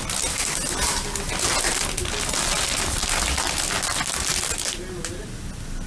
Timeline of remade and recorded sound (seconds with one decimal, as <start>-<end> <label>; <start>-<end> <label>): 0.0-5.9 recorded